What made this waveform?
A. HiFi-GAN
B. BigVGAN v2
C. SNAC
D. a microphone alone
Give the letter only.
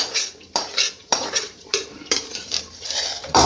B